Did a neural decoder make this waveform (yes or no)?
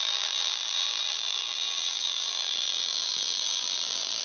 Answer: yes